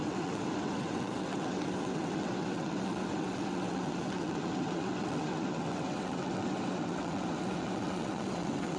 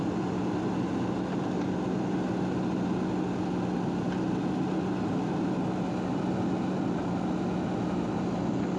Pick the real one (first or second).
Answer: second